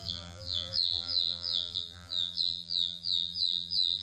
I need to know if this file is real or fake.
fake